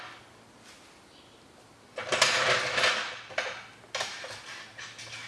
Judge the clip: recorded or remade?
recorded